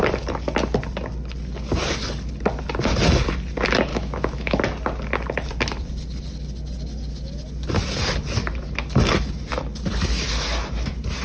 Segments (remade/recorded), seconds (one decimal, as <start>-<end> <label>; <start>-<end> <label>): 0.0-3.9 recorded; 3.9-4.6 remade; 4.6-11.2 recorded